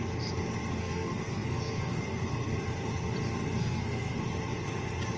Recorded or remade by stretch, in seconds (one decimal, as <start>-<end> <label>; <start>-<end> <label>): 0.0-0.8 recorded; 0.8-2.5 remade; 2.5-3.6 recorded; 3.6-4.2 remade; 4.2-5.2 recorded

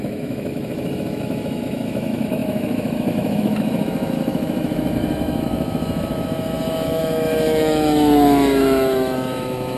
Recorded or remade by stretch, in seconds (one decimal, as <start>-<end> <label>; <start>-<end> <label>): 0.0-9.8 remade

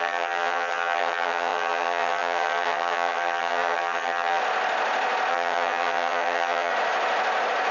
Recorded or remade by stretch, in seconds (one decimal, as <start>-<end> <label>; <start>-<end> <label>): 0.0-4.4 remade; 4.4-5.3 recorded; 5.3-6.7 remade; 6.7-7.7 recorded

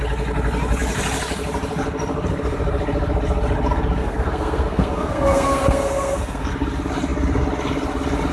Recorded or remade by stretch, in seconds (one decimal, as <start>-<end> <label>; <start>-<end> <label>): 0.0-4.0 recorded; 4.0-6.5 remade; 6.5-8.3 recorded

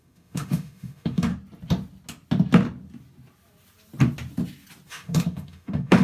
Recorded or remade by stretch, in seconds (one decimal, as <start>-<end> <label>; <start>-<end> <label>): 0.0-1.3 remade; 1.3-4.9 recorded; 4.9-6.0 remade

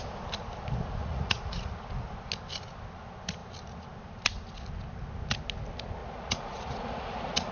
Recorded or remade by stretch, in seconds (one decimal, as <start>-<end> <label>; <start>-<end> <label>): 0.0-1.0 recorded; 1.0-1.7 remade; 1.7-6.0 recorded; 6.0-7.5 remade